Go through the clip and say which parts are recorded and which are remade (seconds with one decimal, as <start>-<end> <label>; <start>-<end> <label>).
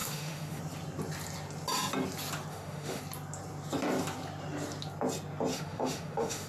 0.0-0.6 remade; 0.6-2.5 recorded; 2.5-3.0 remade; 3.0-5.5 recorded; 5.5-6.5 remade